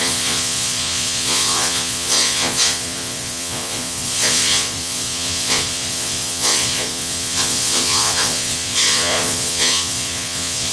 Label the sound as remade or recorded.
remade